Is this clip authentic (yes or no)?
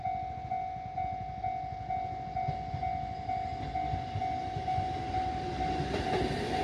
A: yes